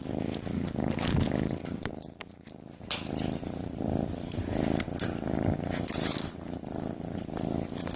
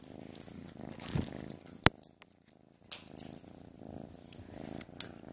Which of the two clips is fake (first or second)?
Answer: first